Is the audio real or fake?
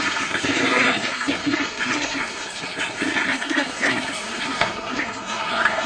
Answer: fake